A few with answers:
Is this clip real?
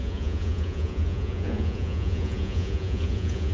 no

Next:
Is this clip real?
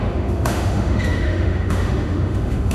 no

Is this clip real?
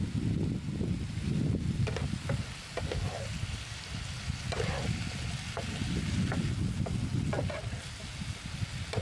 yes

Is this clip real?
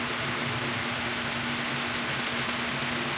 yes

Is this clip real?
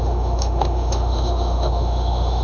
no